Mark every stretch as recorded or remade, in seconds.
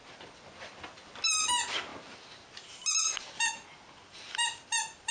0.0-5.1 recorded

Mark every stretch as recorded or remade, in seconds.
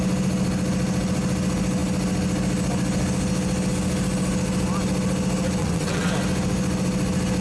0.0-5.6 recorded; 5.6-6.1 remade; 6.1-7.4 recorded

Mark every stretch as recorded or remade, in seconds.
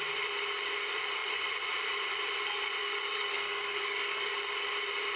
0.0-2.8 recorded; 2.8-4.3 remade; 4.3-5.2 recorded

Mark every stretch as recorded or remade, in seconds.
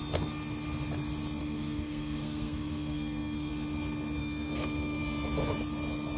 0.0-1.4 recorded; 1.4-3.5 remade; 3.5-4.2 recorded; 4.2-5.0 remade; 5.0-6.2 recorded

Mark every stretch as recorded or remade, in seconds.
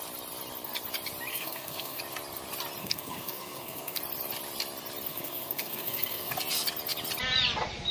0.0-1.3 recorded; 1.3-2.0 remade; 2.0-2.8 recorded; 2.8-4.0 remade; 4.0-5.1 recorded; 5.1-6.3 remade; 6.3-7.9 recorded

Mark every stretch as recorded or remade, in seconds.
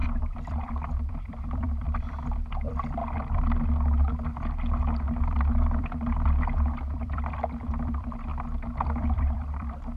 0.0-3.0 remade; 3.0-5.2 recorded; 5.2-8.3 remade; 8.3-9.0 recorded; 9.0-10.0 remade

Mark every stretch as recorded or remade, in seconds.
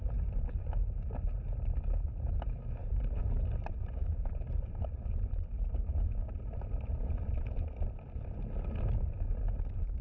0.0-0.6 remade; 0.6-2.8 recorded; 2.8-3.7 remade; 3.7-10.0 recorded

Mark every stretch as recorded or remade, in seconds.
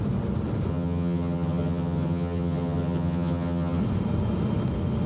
0.0-0.7 recorded; 0.7-3.8 remade; 3.8-5.1 recorded